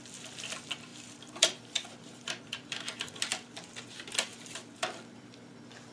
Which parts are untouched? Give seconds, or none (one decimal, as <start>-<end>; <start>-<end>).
none